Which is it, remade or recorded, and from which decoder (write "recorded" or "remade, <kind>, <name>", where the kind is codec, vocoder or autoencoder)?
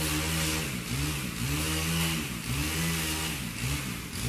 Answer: recorded